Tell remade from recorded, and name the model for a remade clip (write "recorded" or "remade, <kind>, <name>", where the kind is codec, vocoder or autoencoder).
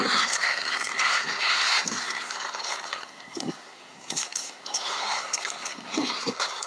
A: remade, codec, SNAC